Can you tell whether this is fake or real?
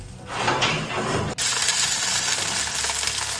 real